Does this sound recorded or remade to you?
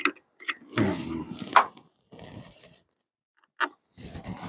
recorded